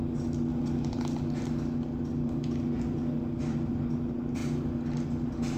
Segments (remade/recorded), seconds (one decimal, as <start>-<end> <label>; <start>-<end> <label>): 0.0-0.5 recorded; 0.5-3.9 remade; 3.9-4.4 recorded; 4.4-5.6 remade